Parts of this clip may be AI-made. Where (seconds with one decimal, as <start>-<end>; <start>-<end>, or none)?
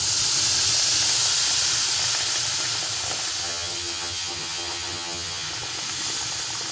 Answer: 3.4-5.5